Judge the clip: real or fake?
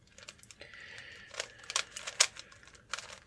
real